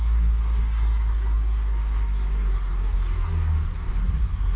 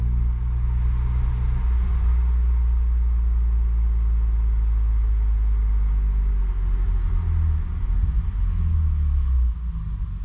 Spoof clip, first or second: first